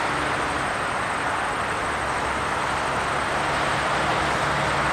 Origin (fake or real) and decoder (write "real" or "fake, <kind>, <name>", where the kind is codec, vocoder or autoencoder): real